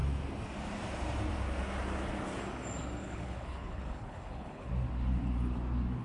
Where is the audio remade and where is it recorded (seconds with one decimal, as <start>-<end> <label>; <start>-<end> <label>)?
0.0-3.0 recorded; 3.0-4.7 remade; 4.7-6.0 recorded